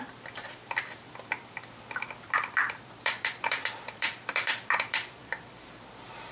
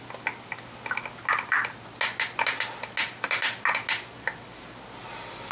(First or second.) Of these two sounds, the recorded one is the second